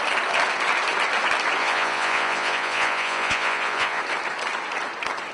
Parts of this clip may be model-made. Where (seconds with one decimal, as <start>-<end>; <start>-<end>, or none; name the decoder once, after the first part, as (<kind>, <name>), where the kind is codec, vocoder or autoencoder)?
1.6-4.0 (vocoder, Vocos)